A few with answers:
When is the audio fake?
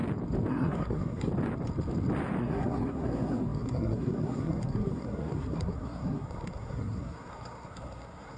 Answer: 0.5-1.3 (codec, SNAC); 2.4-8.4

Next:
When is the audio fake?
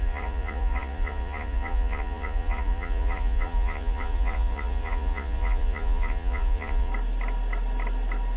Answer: 0.0-6.9 (vocoder, Vocos)